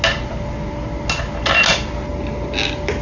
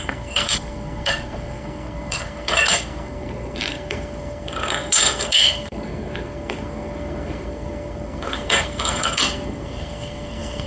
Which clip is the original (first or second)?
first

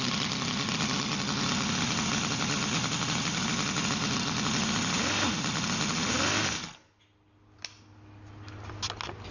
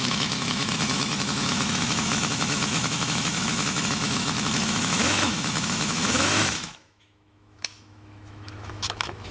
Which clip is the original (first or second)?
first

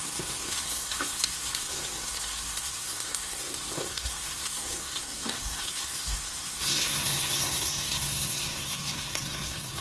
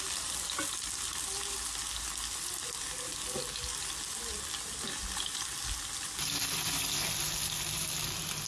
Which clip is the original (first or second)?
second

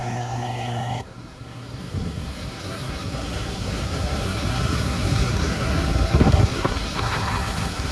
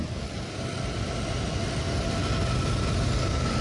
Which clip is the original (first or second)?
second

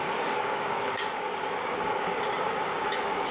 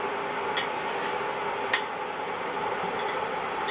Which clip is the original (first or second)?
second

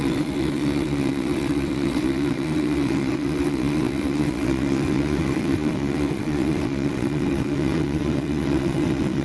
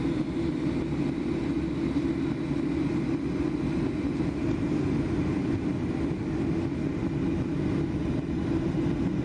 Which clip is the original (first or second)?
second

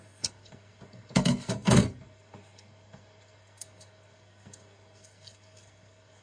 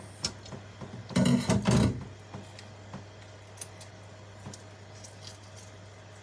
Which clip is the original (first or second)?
second